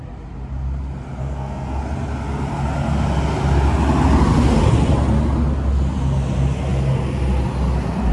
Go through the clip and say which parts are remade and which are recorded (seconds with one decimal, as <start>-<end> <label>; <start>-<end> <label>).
0.0-1.2 recorded; 1.2-1.8 remade; 1.8-8.1 recorded